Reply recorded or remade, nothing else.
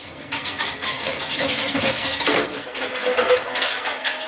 remade